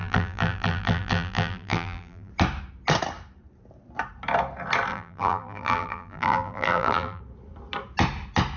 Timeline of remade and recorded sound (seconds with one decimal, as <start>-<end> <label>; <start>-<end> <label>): 0.0-2.3 remade; 2.3-4.9 recorded; 4.9-7.2 remade; 7.2-8.6 recorded